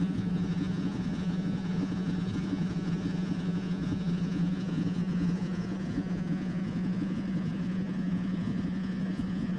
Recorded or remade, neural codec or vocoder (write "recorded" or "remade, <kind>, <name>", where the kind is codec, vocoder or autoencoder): remade, vocoder, Vocos